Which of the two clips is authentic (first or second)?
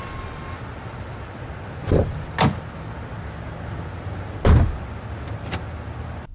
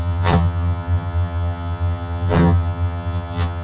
first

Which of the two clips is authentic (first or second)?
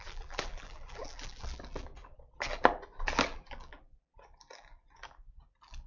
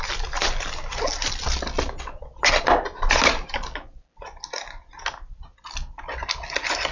second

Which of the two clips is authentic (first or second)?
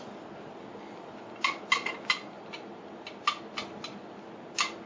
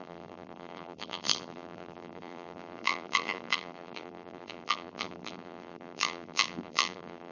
first